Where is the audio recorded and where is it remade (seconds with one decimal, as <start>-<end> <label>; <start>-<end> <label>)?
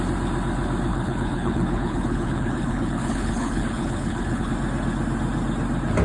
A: 0.0-0.9 recorded; 0.9-4.5 remade; 4.5-6.0 recorded